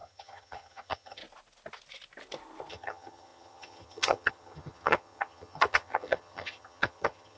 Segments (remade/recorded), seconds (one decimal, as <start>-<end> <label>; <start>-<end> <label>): 0.0-1.2 remade; 1.2-2.7 recorded; 2.7-7.4 remade